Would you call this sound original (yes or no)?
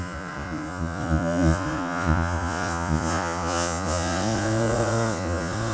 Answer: no